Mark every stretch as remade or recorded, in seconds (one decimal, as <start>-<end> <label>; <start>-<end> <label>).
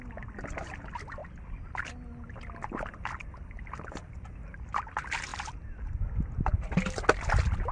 0.0-7.7 recorded